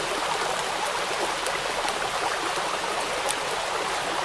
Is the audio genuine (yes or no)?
yes